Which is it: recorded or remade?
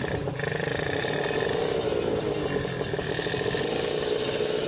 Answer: recorded